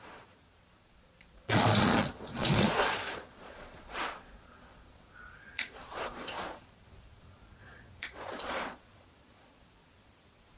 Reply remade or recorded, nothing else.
remade